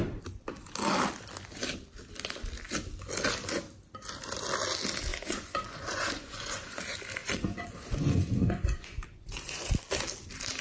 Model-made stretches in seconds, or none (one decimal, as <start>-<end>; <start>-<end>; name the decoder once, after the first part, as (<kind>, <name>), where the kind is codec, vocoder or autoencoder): 5.1-6.8 (vocoder, Vocos); 7.2-9.7